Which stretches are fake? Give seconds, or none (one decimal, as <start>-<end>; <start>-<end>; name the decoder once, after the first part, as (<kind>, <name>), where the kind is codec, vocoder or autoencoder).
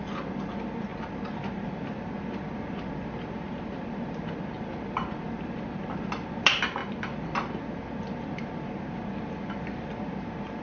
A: none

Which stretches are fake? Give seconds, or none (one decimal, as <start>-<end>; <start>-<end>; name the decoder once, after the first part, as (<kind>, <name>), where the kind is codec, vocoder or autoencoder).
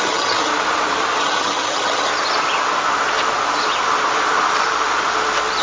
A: 0.0-0.5 (vocoder, HiFi-GAN); 1.2-2.1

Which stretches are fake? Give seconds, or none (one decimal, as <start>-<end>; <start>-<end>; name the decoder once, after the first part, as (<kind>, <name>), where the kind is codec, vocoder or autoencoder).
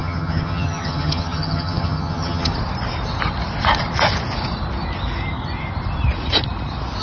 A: 0.0-2.5 (vocoder, HiFi-GAN)